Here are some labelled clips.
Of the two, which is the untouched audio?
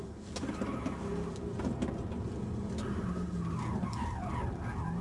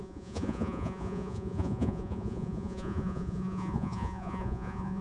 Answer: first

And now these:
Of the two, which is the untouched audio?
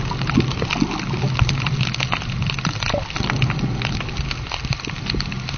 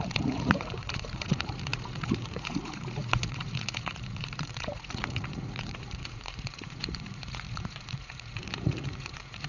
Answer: first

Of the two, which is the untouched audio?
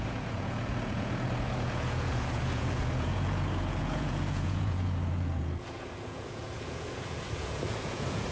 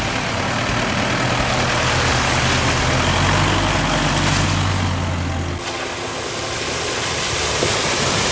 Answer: second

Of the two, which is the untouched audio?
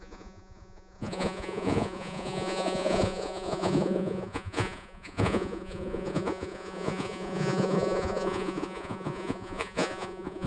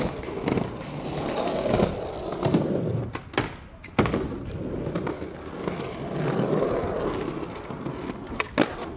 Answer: second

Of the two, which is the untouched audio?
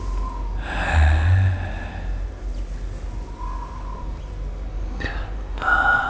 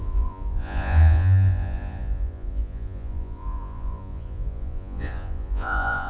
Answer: first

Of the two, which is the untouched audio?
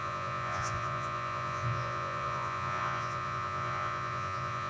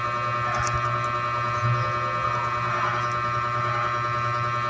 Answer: second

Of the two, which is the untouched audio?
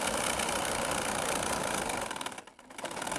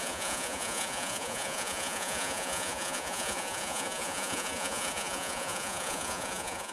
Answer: first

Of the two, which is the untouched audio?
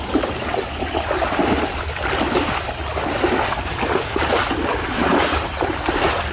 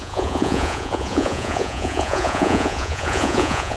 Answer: first